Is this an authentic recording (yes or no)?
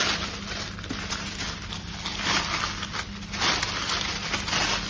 yes